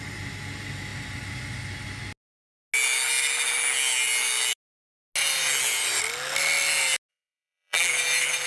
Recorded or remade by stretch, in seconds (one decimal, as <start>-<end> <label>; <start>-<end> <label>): 0.0-7.1 recorded; 7.1-7.9 remade; 7.9-8.5 recorded